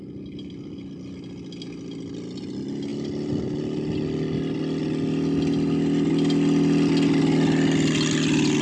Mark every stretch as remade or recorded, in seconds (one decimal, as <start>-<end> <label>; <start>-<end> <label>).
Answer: 0.0-8.6 recorded